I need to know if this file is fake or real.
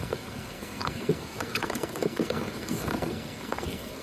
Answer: fake